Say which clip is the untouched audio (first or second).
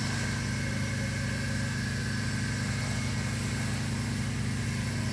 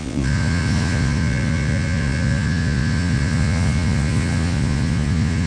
first